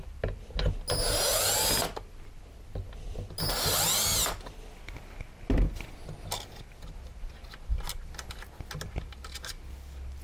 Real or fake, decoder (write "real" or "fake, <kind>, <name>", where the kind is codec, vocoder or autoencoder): real